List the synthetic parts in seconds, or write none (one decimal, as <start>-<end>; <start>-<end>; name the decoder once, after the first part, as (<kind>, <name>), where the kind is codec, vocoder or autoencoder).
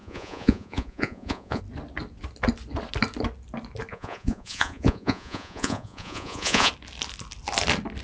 0.0-1.6 (vocoder, Vocos); 3.9-6.7